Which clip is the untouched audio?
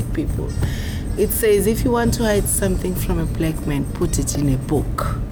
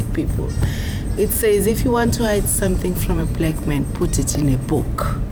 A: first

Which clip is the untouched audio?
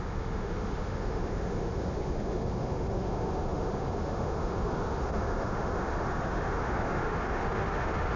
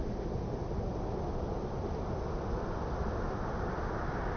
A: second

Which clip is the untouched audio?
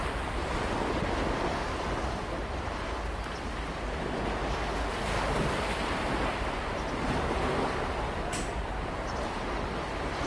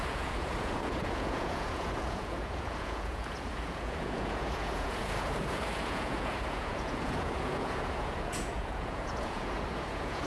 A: first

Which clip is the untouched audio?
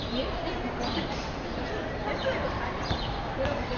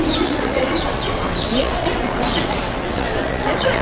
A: first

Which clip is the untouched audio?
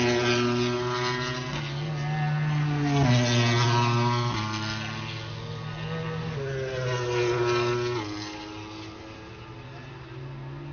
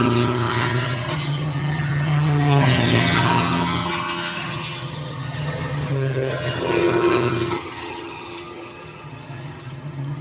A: first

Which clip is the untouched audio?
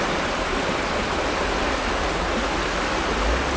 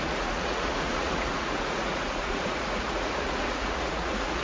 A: first